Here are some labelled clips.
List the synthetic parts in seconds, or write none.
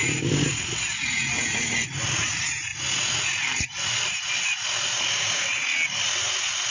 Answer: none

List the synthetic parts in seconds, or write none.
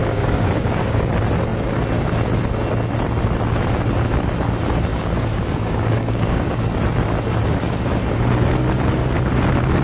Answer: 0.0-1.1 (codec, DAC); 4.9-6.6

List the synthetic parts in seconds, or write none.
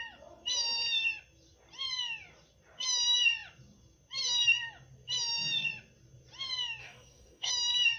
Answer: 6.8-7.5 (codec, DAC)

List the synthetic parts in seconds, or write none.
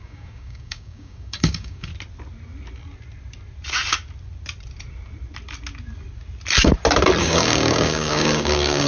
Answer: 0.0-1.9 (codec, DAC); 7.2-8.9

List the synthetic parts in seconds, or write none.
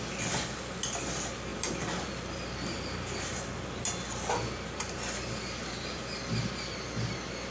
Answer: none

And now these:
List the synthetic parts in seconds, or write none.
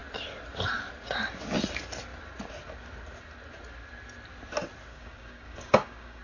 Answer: 4.9-6.2 (codec, DAC)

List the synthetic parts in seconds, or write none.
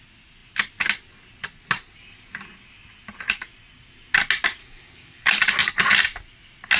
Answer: 4.6-5.4 (codec, DAC)